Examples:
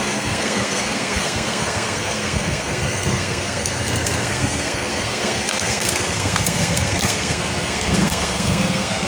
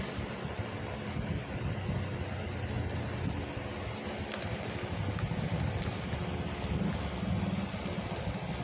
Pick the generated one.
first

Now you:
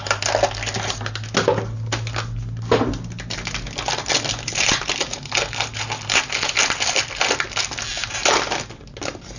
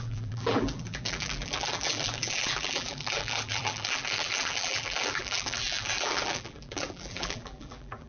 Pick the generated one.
second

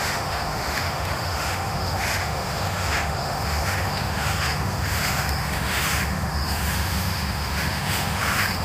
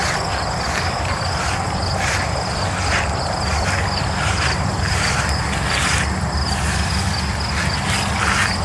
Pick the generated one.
first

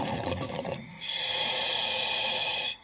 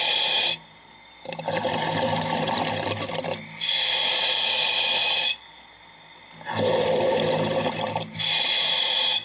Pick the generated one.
first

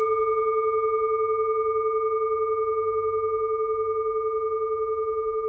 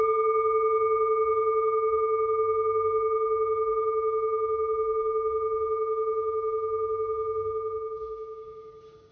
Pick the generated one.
second